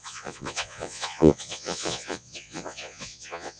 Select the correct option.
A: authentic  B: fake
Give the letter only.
B